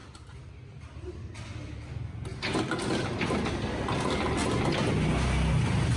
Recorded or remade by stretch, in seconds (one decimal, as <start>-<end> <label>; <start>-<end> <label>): 0.0-6.0 recorded